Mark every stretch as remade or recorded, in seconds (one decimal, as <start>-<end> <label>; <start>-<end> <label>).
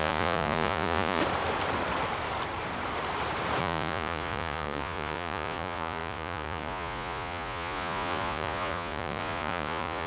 0.0-1.2 remade; 1.2-3.6 recorded; 3.6-10.1 remade